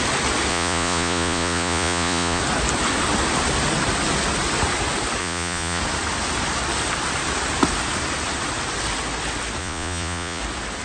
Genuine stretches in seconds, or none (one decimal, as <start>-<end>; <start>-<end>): 0.0-0.5; 2.4-5.2; 5.8-9.6; 10.4-10.8